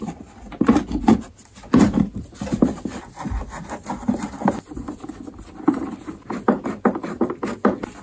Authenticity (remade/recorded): recorded